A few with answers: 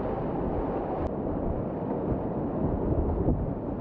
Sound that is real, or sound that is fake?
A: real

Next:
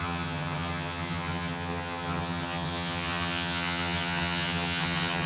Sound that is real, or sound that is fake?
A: fake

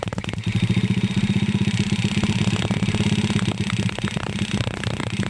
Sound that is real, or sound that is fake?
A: real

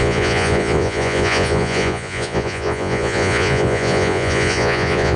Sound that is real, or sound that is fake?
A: fake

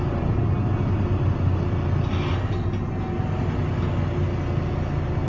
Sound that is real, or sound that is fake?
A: real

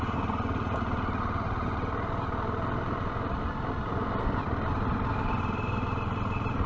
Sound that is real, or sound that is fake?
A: real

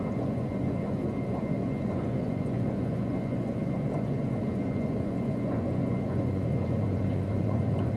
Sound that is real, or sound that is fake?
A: fake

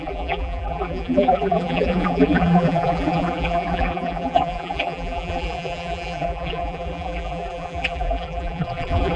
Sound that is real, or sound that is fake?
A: fake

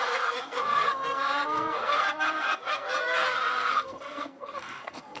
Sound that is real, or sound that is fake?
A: fake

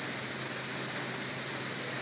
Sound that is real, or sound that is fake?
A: real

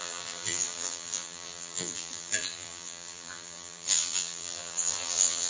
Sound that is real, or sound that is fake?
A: fake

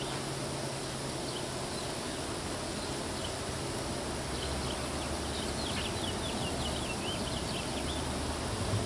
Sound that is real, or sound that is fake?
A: real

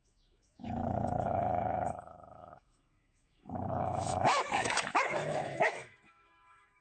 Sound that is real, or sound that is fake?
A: fake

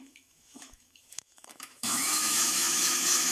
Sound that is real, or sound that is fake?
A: fake